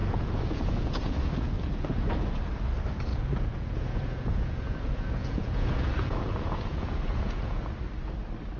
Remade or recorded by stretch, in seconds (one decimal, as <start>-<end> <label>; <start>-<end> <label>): 0.0-2.3 remade; 2.3-3.1 recorded; 3.1-7.6 remade; 7.6-8.6 recorded